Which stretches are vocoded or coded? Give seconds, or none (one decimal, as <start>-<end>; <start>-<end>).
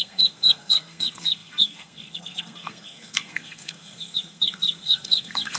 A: 0.0-5.6